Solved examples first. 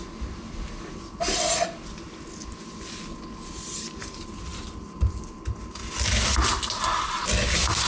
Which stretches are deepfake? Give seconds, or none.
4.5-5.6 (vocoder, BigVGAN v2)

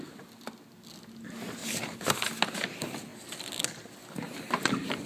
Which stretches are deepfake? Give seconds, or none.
1.6-2.2 (vocoder, BigVGAN v2)

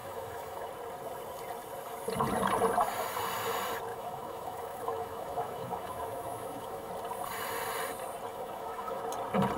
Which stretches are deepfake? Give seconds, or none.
0.0-0.7 (autoencoder, DAC-VAE); 3.9-6.9; 8.3-9.0

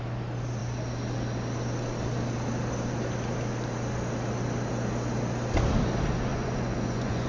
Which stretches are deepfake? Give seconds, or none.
6.3-7.3 (vocoder, Vocos)

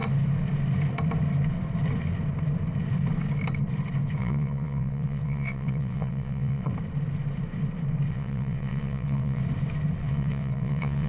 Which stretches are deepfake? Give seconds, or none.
4.2-6.7 (vocoder, WaveNeXt); 8.1-9.4; 10.0-11.1

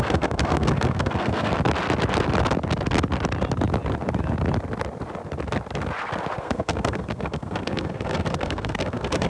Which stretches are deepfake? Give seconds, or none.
0.0-1.5 (codec, SNAC); 6.4-9.3

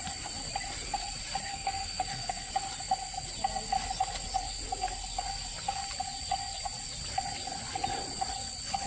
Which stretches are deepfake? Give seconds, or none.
1.5-2.5 (codec, SNAC)